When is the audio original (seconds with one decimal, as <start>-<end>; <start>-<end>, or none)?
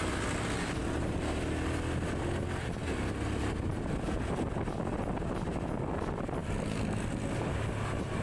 0.0-8.2